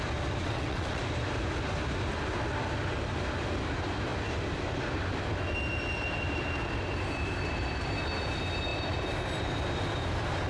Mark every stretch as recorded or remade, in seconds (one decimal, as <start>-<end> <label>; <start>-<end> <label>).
0.0-0.4 recorded; 0.4-1.0 remade; 1.0-10.5 recorded